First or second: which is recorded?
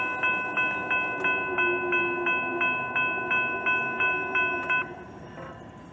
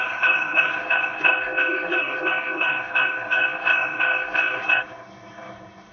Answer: first